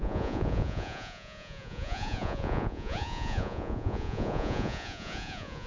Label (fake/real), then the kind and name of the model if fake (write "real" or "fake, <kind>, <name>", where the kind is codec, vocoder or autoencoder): fake, vocoder, Vocos